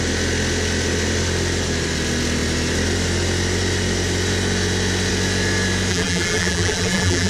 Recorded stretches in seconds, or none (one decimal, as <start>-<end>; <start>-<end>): 0.0-5.9